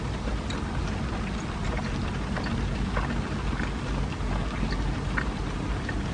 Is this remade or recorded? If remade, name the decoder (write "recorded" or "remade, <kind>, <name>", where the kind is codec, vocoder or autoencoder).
recorded